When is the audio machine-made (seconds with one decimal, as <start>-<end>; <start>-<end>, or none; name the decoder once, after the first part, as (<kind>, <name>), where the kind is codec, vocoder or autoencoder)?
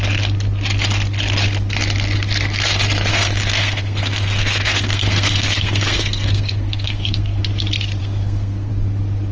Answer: 3.1-7.4 (codec, SNAC); 8.0-8.7